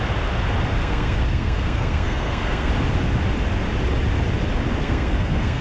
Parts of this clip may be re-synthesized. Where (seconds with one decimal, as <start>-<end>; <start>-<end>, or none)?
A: 0.8-2.7; 4.8-5.6